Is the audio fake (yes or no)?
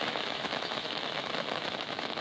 yes